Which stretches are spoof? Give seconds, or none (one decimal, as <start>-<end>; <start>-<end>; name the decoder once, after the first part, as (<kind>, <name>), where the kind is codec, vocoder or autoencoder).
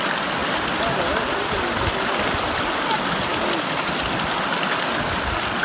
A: none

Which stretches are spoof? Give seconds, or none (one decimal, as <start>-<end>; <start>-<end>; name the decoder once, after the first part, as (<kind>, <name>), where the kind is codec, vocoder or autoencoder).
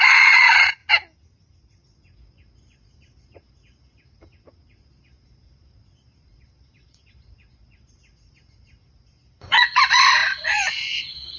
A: 0.0-0.8 (vocoder, Vocos); 1.5-11.4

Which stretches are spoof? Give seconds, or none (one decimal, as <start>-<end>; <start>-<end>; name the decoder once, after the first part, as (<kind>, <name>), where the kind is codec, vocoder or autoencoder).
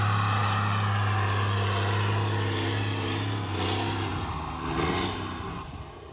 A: none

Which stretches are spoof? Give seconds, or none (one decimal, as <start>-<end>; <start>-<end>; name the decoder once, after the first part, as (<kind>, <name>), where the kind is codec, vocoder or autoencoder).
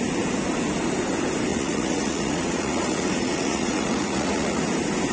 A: 1.5-4.6 (vocoder, Vocos)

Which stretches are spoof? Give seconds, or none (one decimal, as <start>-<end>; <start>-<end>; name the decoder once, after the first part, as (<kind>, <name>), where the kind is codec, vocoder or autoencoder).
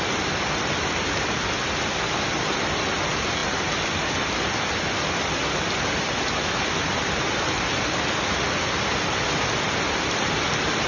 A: none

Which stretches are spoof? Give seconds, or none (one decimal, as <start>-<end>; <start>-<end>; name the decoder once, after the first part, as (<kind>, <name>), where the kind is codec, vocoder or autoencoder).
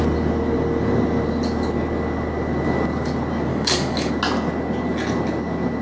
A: 3.5-4.1 (codec, DAC)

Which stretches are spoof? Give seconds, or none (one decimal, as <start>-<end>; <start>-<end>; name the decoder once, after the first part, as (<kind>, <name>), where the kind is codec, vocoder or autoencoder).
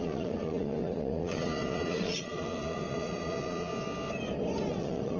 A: 0.0-3.7 (vocoder, Vocos); 4.7-5.2